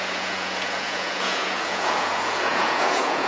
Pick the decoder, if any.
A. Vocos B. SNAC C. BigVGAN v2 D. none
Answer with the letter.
A